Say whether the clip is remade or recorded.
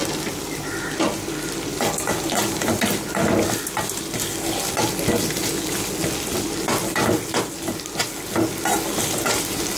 recorded